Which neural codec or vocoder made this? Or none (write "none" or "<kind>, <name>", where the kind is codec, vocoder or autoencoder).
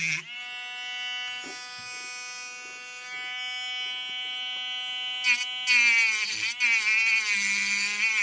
none